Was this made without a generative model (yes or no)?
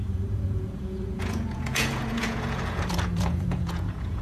no